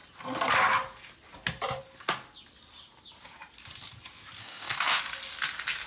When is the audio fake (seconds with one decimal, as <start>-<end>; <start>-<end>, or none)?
4.4-5.0